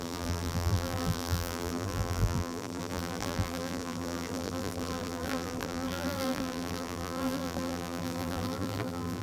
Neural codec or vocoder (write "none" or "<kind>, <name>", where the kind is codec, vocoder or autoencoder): vocoder, BigVGAN v2